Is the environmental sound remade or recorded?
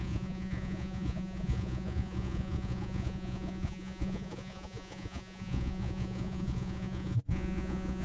remade